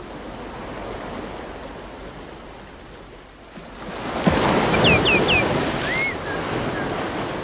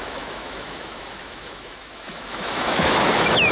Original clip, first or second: first